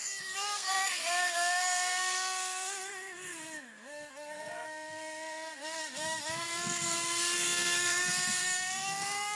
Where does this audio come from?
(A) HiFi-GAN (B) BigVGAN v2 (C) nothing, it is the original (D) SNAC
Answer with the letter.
D